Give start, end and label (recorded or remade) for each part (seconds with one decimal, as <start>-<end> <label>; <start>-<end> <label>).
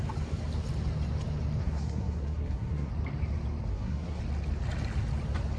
0.0-1.6 recorded; 1.6-2.9 remade; 2.9-3.7 recorded; 3.7-4.2 remade; 4.2-5.6 recorded